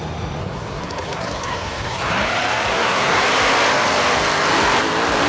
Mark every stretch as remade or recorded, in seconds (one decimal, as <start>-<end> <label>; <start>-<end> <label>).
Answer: 0.0-0.4 recorded; 0.4-2.1 remade; 2.1-2.7 recorded; 2.7-3.2 remade; 3.2-5.3 recorded